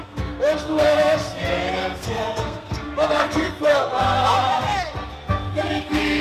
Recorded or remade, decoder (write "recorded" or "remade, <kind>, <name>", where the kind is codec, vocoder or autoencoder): remade, codec, SNAC